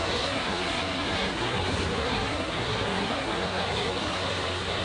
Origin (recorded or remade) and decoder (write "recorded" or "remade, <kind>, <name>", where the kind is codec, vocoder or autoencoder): remade, codec, SNAC